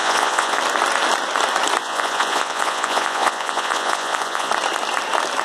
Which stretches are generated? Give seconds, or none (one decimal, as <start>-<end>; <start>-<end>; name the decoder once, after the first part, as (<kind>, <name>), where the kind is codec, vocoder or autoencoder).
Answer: 0.0-0.6 (vocoder, Vocos); 1.8-4.5